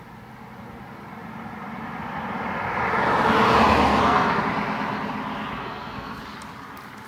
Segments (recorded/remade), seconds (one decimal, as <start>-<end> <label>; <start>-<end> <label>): 0.0-3.9 recorded; 3.9-4.4 remade; 4.4-5.6 recorded; 5.6-6.2 remade; 6.2-7.1 recorded